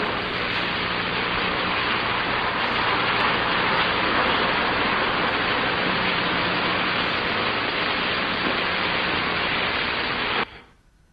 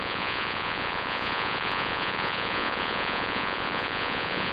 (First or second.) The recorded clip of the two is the first